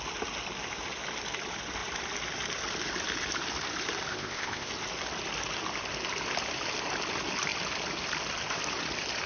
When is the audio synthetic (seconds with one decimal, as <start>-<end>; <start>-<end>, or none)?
4.1-4.7